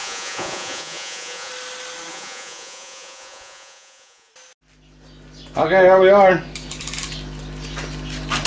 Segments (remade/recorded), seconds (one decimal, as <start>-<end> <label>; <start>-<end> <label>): 0.0-1.5 remade; 1.5-2.1 recorded; 2.1-4.3 remade; 4.3-8.5 recorded